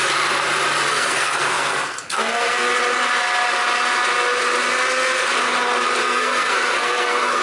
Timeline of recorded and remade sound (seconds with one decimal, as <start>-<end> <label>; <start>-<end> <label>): 0.0-0.9 recorded; 0.9-2.7 remade; 2.7-6.0 recorded; 6.0-7.4 remade